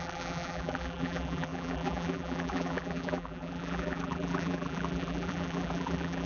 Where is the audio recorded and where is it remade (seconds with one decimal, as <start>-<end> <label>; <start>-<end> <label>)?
0.0-6.3 remade